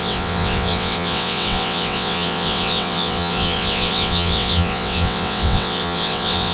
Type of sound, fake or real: fake